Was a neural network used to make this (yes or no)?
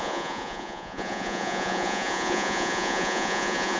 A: yes